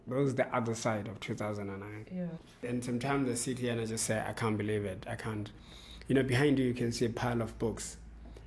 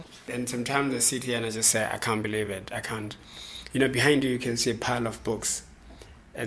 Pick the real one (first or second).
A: first